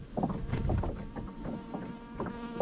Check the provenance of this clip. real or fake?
real